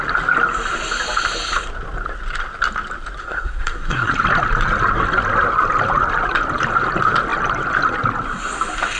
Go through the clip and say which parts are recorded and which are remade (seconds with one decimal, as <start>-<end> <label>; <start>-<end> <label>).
0.0-3.2 recorded; 3.2-4.1 remade; 4.1-9.0 recorded

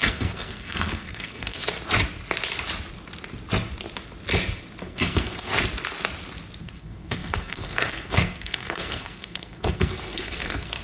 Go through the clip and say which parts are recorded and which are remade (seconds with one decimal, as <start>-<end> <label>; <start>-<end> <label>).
0.0-1.6 remade; 1.6-4.8 recorded; 4.8-5.5 remade; 5.5-6.6 recorded; 6.6-10.8 remade